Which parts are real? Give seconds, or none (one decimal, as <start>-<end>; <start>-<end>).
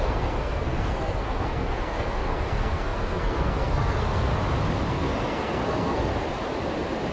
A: 4.3-4.9; 6.1-7.1